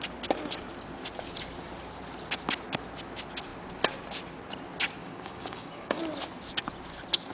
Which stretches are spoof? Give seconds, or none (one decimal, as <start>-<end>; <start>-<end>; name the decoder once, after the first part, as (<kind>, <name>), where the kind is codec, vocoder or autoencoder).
5.0-6.0 (codec, DAC)